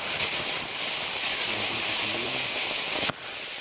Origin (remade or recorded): recorded